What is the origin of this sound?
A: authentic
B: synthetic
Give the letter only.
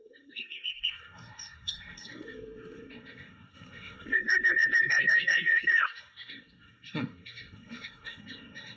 B